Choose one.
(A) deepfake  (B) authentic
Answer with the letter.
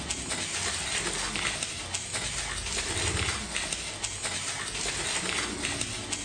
B